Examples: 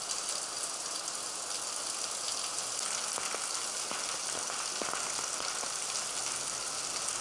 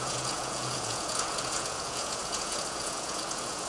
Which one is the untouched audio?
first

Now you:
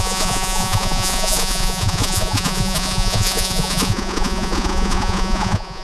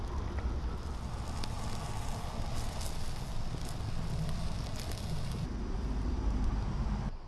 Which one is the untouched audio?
second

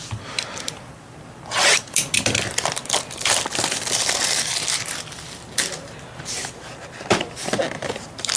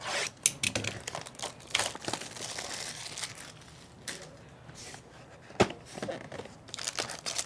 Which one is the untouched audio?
second